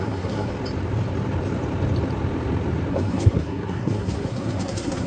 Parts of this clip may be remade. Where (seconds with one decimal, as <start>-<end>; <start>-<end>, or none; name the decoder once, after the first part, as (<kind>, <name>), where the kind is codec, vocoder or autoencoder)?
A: 0.0-0.5 (codec, SNAC); 2.9-5.1